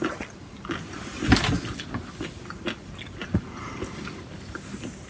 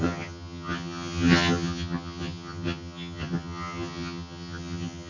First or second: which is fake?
second